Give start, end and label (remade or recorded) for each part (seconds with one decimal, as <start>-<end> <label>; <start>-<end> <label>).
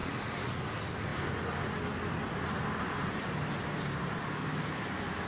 0.0-0.6 remade; 0.6-5.3 recorded